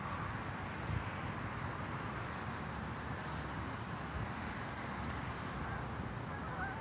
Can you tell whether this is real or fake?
real